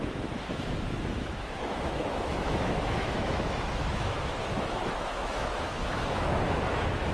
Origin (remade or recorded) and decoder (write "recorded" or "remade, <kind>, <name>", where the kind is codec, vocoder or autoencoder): remade, autoencoder, DAC-VAE